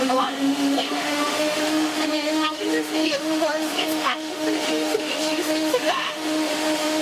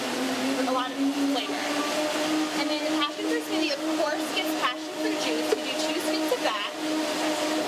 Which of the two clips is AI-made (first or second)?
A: first